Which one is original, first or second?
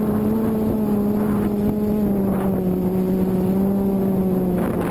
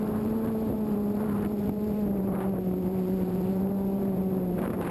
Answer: first